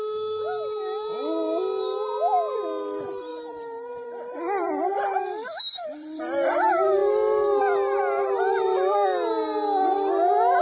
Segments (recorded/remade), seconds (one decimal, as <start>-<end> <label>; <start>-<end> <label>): 0.0-3.3 recorded; 3.3-6.2 remade; 6.2-10.6 recorded

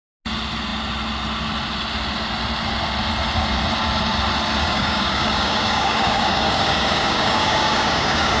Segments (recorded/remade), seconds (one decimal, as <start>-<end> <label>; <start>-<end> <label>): 0.0-4.6 recorded; 4.6-8.4 remade

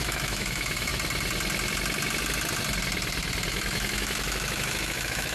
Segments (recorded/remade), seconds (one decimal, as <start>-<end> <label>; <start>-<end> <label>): 0.0-0.9 remade; 0.9-3.5 recorded; 3.5-5.3 remade

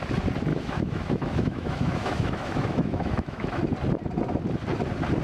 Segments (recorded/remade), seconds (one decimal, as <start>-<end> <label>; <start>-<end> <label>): 0.0-0.5 recorded; 0.5-3.6 remade; 3.6-5.2 recorded

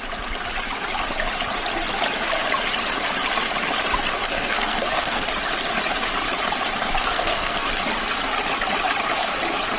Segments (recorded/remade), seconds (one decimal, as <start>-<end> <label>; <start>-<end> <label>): 0.0-4.2 recorded; 4.2-5.3 remade; 5.3-7.0 recorded; 7.0-7.7 remade; 7.7-9.8 recorded

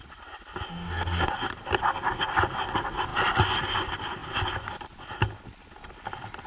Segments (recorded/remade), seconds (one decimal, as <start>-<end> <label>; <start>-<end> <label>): 0.0-0.7 recorded; 0.7-1.3 remade; 1.3-6.5 recorded

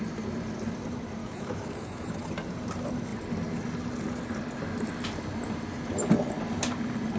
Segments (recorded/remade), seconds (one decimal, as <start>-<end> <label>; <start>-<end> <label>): 0.0-1.2 recorded; 1.2-2.3 remade; 2.3-7.2 recorded